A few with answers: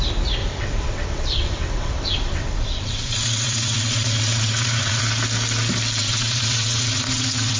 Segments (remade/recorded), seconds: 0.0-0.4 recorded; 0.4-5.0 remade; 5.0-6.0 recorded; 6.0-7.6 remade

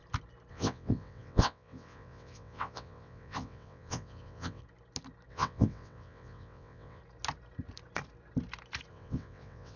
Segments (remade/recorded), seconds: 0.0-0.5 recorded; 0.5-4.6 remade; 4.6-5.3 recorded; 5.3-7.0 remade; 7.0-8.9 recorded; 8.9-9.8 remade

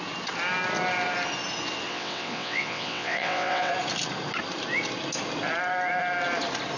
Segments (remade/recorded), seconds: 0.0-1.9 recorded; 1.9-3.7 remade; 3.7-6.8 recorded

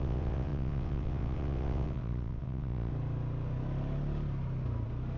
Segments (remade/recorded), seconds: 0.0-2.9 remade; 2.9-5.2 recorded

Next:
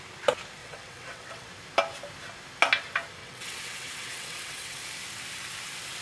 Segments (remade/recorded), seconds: 0.0-0.6 recorded; 0.6-1.5 remade; 1.5-3.2 recorded; 3.2-4.8 remade; 4.8-6.0 recorded

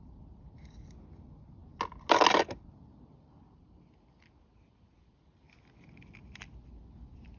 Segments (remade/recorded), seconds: 0.0-7.4 recorded